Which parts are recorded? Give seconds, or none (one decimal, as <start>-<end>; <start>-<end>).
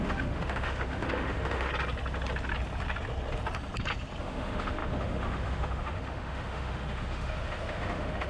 1.7-4.2